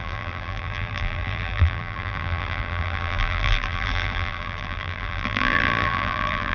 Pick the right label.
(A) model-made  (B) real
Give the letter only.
A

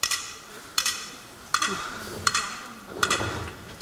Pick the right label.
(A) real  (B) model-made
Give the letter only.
B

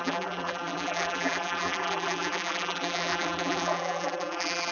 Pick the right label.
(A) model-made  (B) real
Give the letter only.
A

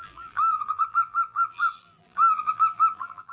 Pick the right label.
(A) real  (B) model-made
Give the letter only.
B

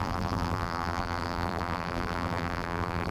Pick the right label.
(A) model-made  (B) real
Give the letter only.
A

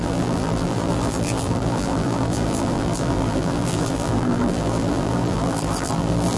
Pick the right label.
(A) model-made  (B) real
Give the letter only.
A